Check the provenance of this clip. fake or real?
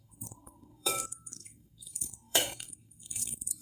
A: fake